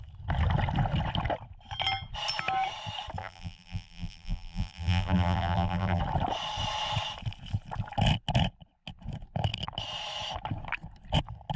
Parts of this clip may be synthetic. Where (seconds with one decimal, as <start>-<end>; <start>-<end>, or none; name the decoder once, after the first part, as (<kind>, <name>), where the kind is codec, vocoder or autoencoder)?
3.2-6.0 (vocoder, BigVGAN v2)